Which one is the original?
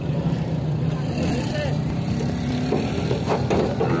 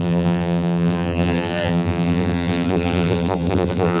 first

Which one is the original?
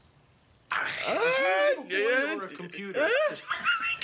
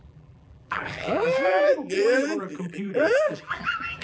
first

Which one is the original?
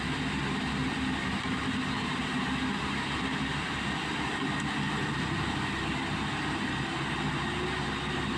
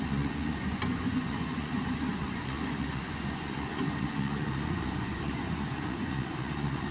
first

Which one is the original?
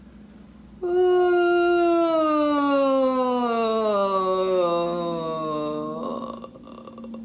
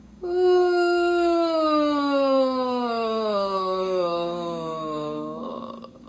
first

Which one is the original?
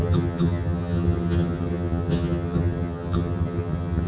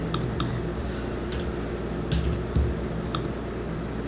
second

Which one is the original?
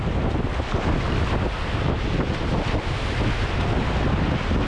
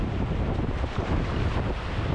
first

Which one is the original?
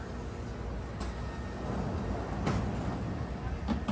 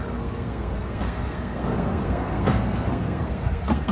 first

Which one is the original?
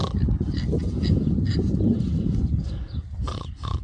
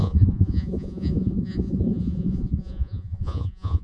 first